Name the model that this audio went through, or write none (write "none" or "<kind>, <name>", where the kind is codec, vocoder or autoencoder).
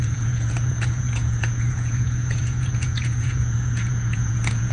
vocoder, Vocos